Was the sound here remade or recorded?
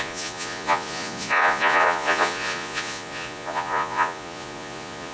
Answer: remade